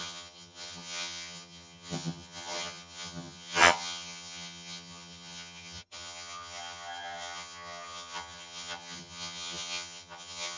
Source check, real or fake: fake